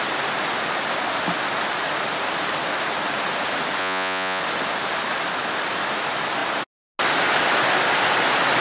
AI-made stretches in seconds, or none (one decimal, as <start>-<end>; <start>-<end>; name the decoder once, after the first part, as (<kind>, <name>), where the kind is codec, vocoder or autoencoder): 3.8-4.4 (vocoder, Vocos)